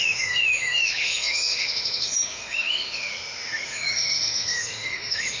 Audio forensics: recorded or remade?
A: remade